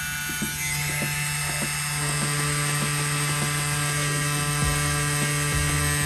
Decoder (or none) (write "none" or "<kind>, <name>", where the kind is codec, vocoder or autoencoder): none